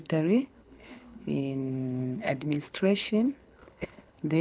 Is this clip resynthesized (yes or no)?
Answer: yes